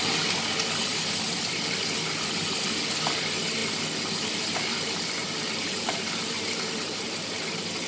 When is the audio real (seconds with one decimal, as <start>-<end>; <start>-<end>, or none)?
0.0-5.2; 7.4-7.9